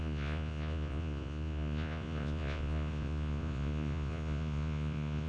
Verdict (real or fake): fake